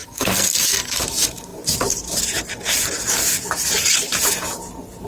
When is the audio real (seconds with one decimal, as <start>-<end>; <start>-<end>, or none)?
1.0-5.1